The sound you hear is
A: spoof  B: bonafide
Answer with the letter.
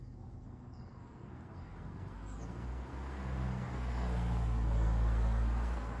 A